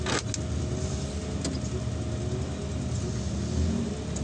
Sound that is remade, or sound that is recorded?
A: recorded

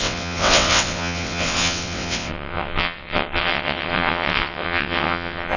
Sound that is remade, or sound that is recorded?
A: remade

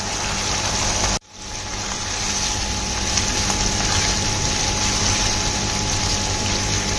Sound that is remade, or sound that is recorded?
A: recorded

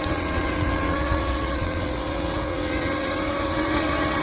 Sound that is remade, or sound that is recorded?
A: remade